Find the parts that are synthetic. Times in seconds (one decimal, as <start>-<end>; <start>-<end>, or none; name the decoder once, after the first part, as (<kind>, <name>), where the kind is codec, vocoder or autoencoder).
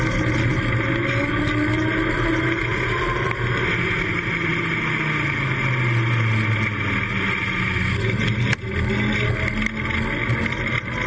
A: none